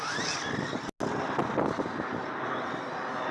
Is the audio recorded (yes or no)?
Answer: yes